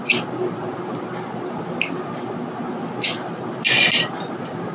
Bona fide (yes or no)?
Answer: yes